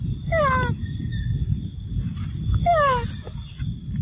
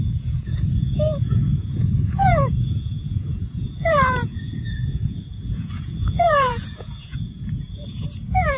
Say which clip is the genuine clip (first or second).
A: first